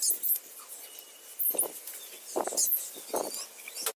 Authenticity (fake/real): real